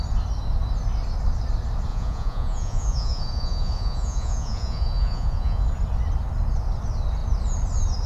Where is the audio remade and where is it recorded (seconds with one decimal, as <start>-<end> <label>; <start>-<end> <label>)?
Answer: 0.0-1.9 recorded; 1.9-5.6 remade; 5.6-8.1 recorded